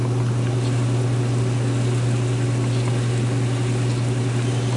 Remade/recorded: recorded